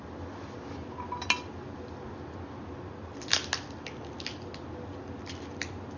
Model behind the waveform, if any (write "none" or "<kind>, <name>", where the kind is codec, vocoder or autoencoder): none